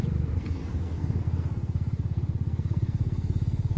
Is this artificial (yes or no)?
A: yes